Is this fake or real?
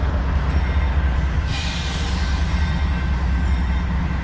real